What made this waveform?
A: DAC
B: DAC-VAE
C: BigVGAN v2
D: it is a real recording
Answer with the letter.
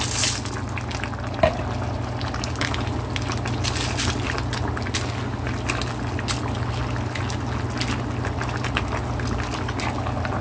D